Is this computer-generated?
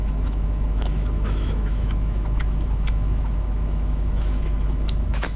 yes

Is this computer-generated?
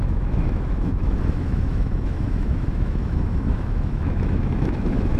yes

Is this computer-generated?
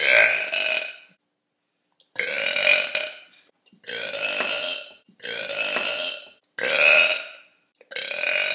no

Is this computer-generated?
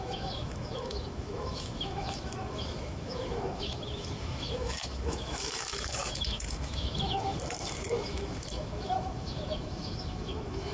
yes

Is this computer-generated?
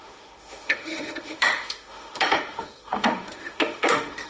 yes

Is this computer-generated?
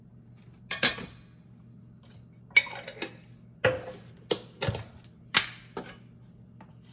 no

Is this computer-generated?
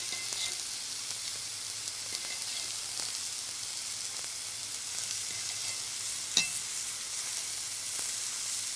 no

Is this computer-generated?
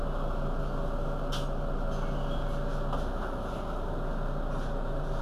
no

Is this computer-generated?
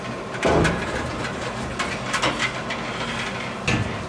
no